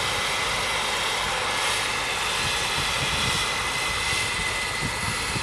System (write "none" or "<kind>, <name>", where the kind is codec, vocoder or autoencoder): none